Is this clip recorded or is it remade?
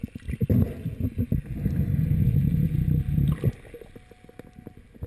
recorded